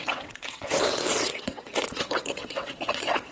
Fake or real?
fake